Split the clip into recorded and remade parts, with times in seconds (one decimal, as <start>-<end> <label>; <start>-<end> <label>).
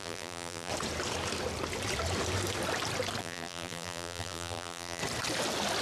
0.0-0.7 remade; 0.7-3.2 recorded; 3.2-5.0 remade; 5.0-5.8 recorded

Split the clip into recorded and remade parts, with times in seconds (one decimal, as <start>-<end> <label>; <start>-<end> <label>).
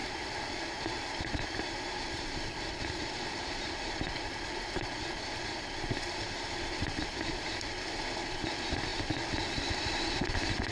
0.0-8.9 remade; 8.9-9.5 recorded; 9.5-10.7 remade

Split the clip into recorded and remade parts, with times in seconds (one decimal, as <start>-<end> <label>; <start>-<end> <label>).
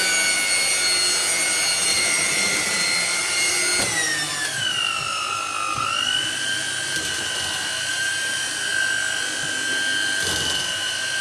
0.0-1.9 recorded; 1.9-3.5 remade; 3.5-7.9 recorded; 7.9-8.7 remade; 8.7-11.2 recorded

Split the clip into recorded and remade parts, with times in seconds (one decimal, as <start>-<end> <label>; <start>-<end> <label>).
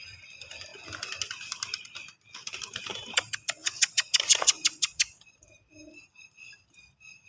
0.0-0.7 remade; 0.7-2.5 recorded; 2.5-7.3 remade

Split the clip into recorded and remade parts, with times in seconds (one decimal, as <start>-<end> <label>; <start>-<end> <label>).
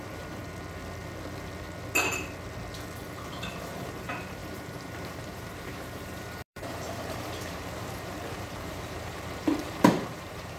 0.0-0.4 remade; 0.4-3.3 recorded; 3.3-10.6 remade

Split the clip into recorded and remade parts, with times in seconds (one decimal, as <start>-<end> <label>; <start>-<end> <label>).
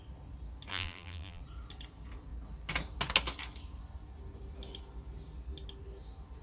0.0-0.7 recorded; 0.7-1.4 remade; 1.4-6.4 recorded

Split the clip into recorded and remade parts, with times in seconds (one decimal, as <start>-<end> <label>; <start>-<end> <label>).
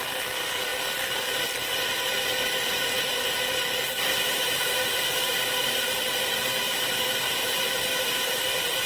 0.0-8.9 recorded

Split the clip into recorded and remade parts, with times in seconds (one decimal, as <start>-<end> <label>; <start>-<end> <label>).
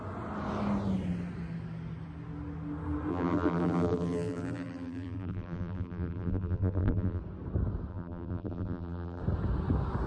0.0-3.1 recorded; 3.1-7.2 remade; 7.2-7.9 recorded; 7.9-9.2 remade; 9.2-10.1 recorded